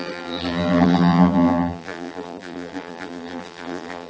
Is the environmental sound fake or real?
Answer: fake